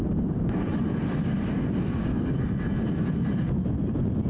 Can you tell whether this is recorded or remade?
recorded